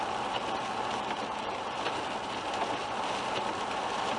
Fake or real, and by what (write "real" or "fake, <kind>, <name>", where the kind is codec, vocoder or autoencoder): real